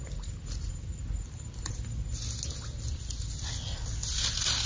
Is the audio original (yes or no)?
yes